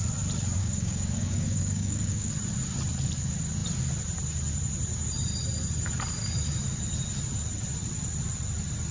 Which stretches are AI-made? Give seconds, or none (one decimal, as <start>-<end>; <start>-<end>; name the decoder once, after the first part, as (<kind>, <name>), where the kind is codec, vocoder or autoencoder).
0.6-2.3 (codec, DAC)